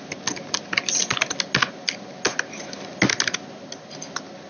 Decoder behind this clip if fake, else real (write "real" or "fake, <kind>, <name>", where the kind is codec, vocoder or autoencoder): real